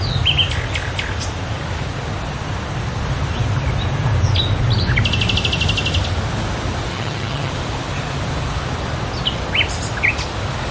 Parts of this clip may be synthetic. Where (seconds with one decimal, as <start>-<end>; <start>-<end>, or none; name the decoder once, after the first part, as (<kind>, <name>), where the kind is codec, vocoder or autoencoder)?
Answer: 6.9-7.5 (vocoder, HiFi-GAN)